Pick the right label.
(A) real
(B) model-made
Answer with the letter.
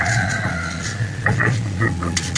B